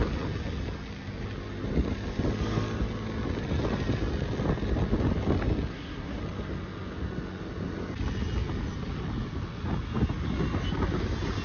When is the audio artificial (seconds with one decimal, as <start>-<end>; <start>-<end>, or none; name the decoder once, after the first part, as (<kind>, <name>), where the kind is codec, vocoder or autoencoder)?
5.7-6.2 (codec, SNAC)